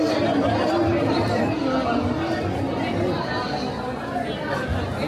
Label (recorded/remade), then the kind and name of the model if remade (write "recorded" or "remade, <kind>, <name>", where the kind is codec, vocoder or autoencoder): recorded